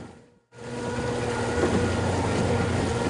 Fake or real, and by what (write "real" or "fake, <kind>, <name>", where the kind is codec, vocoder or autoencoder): real